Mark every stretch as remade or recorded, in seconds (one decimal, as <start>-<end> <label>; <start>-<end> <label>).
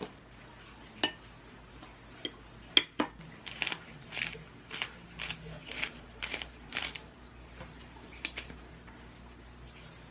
0.0-5.6 recorded; 5.6-8.7 remade; 8.7-10.1 recorded